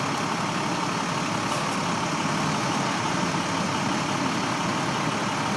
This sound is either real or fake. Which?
real